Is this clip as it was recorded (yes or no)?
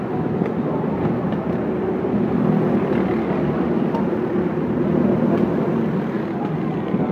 yes